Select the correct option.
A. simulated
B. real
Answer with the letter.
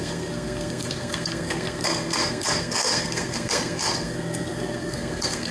A